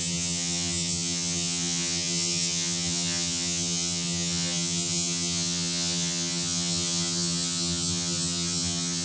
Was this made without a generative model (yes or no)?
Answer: no